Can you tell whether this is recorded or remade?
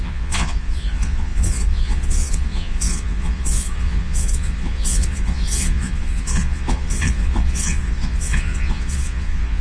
remade